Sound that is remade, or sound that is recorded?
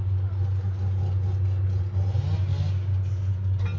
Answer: recorded